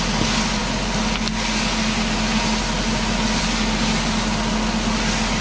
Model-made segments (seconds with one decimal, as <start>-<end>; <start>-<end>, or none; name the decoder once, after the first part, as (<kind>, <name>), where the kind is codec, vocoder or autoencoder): none